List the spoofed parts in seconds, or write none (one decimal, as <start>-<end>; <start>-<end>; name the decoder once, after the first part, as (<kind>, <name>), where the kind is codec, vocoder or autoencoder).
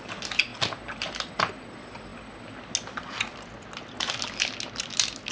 none